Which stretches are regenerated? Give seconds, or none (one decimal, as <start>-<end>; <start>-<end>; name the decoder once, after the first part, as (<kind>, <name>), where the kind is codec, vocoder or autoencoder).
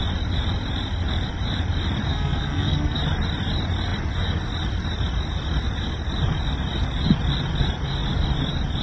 2.1-3.0 (codec, SNAC)